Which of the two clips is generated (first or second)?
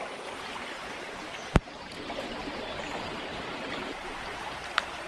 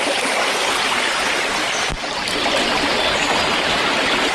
first